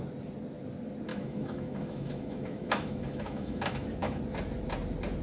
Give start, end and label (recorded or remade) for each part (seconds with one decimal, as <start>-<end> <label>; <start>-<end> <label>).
0.0-1.1 recorded; 1.1-4.2 remade; 4.2-5.2 recorded